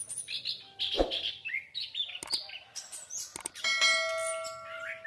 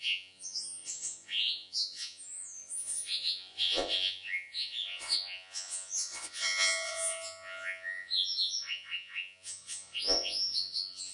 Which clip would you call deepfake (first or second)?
second